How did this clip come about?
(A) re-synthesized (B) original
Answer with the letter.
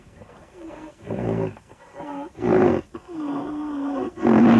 A